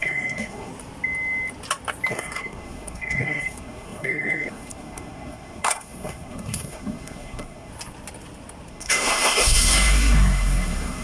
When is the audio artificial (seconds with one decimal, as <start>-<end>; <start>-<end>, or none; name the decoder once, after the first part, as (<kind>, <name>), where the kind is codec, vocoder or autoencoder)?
0.0-0.7 (codec, SNAC); 2.1-7.7; 8.7-11.0